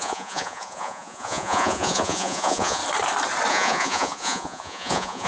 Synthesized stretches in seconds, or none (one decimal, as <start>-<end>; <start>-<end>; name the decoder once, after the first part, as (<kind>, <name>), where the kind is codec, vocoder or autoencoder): 0.0-2.8 (vocoder, Vocos); 3.5-5.3